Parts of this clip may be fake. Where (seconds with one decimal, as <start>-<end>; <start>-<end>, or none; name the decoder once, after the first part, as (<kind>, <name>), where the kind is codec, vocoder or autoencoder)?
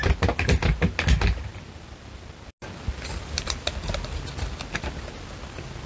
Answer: none